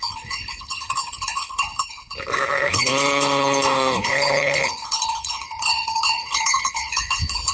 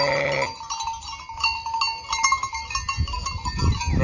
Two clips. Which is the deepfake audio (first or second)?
first